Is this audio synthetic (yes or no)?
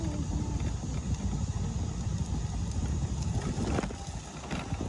no